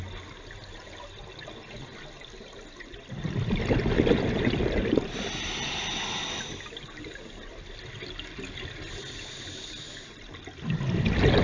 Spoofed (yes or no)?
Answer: no